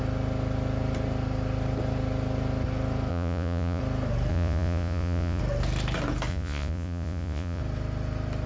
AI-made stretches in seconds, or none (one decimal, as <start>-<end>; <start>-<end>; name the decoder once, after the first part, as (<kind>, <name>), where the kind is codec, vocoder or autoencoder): 3.1-3.8 (vocoder, Vocos); 4.3-5.4; 6.3-7.6